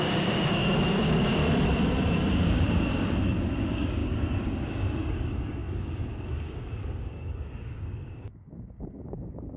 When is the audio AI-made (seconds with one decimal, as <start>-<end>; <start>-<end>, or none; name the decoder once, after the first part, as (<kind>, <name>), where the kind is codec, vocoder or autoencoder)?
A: 0.0-1.4 (codec, DAC); 2.3-9.6